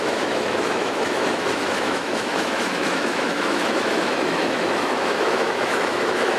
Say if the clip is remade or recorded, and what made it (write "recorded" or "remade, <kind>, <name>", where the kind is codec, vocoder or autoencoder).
remade, autoencoder, DAC-VAE